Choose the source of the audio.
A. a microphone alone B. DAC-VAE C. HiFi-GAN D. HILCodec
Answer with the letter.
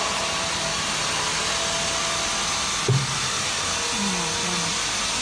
A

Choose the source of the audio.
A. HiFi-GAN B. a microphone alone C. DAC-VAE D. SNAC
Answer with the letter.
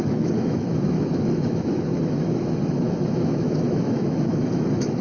C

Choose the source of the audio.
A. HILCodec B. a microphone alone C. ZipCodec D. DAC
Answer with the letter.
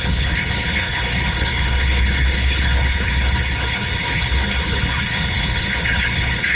A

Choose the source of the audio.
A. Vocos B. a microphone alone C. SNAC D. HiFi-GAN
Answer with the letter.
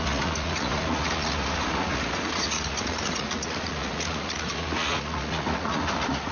A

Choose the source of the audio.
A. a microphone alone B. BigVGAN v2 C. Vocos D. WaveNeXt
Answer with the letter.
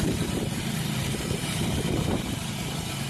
B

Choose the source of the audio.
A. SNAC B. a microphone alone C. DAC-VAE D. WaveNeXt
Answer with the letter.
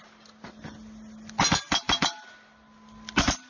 B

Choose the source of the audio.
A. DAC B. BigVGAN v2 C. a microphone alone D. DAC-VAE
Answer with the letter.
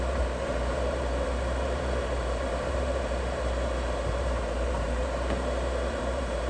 B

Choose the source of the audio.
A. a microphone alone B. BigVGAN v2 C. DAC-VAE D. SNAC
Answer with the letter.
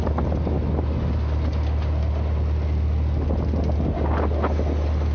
A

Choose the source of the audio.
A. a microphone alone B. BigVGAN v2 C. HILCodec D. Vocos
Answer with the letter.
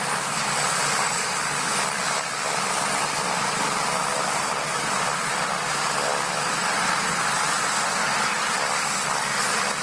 A